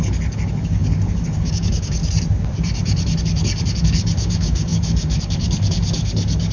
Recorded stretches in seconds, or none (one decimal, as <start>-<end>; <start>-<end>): 2.0-3.2